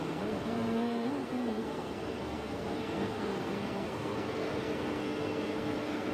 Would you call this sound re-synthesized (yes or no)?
yes